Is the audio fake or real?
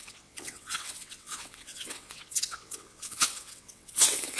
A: fake